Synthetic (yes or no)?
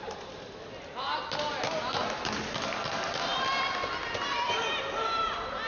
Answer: no